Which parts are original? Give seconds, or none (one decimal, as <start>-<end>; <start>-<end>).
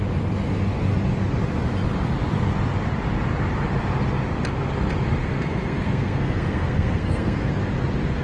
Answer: 0.0-5.2; 7.5-8.2